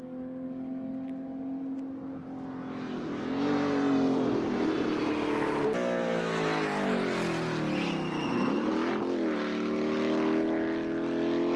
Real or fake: real